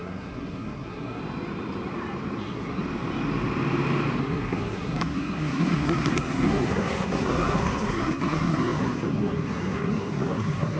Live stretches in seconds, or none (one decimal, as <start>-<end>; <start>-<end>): 1.2-2.4; 2.8-4.2